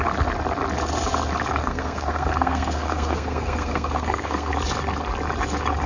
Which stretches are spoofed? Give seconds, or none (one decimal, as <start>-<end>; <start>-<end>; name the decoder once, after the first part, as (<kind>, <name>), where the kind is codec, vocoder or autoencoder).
1.6-4.5 (codec, SNAC)